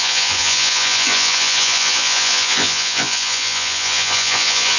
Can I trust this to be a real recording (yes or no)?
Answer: no